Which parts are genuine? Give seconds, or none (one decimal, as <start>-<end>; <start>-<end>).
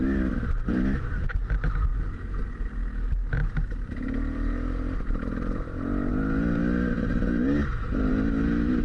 0.0-8.8